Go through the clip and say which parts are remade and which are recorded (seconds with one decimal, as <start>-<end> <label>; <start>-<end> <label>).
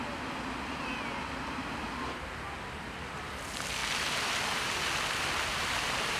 0.0-6.2 recorded